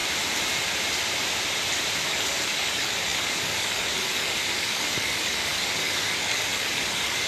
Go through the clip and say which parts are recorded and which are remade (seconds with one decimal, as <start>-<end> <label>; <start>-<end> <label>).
0.0-2.1 recorded; 2.1-7.3 remade